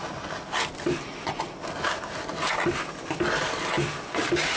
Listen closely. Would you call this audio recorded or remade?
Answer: recorded